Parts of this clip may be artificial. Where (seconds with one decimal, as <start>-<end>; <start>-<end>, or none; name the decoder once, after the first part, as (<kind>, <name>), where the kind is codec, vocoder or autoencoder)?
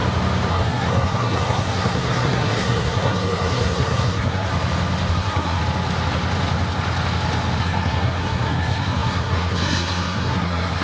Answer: 0.5-4.5 (codec, SNAC); 5.1-5.6; 7.6-10.8